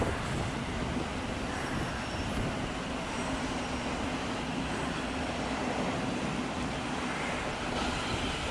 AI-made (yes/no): no